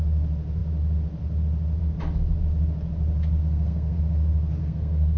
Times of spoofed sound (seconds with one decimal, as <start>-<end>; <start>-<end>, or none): 3.4-4.0; 4.6-5.2